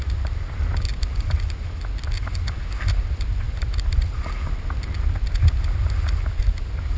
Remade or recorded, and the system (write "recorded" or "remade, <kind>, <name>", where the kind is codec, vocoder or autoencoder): recorded